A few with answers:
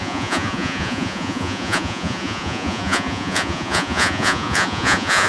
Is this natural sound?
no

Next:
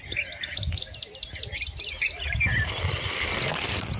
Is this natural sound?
yes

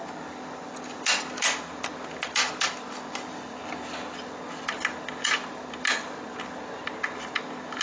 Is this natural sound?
yes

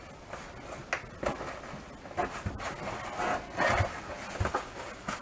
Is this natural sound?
yes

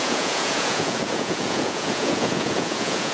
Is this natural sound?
no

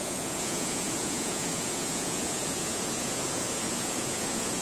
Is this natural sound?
no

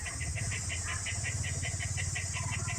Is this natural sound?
yes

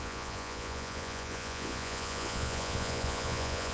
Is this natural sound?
no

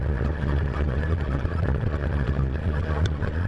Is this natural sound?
no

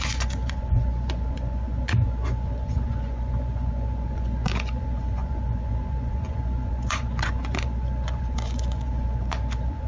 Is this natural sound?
no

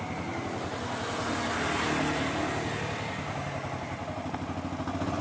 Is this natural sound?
yes